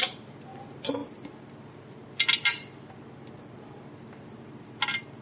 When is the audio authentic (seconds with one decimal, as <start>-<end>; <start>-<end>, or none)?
0.0-5.2